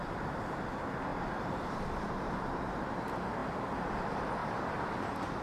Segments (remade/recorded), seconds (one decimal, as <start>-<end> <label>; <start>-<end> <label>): 0.0-1.1 recorded; 1.1-2.9 remade; 2.9-4.4 recorded; 4.4-5.4 remade